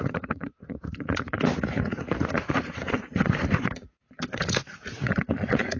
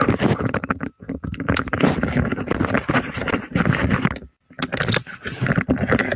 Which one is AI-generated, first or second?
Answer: first